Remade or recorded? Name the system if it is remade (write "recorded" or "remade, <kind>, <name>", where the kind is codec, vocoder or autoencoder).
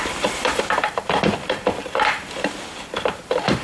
remade, vocoder, BigVGAN v2